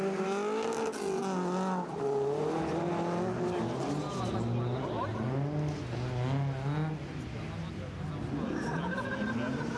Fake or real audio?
real